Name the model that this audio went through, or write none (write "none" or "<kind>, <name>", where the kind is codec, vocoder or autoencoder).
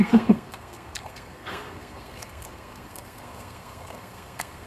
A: codec, SNAC